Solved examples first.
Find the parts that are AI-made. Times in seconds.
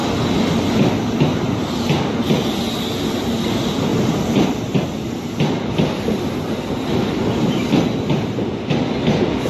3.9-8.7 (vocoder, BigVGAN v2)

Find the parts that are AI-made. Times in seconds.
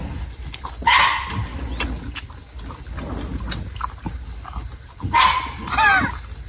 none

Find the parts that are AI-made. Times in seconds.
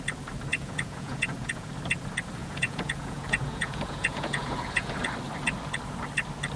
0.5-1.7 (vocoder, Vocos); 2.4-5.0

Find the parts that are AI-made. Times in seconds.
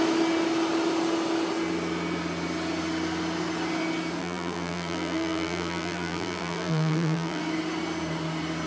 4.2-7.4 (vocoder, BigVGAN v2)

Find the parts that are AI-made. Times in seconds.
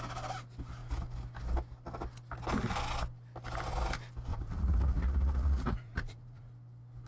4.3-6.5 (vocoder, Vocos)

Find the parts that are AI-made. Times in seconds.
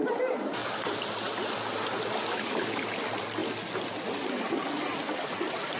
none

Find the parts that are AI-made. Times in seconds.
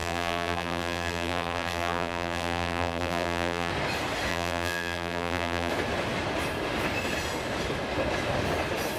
0.0-3.7 (vocoder, BigVGAN v2); 4.3-5.7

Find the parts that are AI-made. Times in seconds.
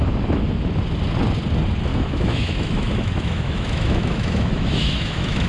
1.9-5.5 (autoencoder, DAC-VAE)